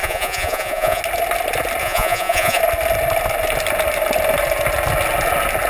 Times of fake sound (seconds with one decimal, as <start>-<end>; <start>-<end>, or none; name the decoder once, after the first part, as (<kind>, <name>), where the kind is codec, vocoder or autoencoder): 0.0-1.0 (vocoder, Vocos); 1.8-2.6